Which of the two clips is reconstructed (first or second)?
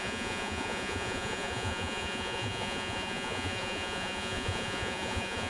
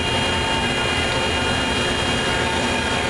first